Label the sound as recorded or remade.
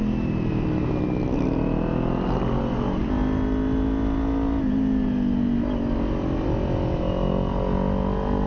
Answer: recorded